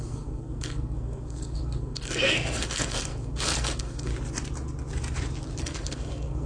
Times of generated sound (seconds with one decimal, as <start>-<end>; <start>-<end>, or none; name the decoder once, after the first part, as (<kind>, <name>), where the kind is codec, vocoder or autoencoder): 0.0-4.1 (codec, SNAC); 5.6-6.5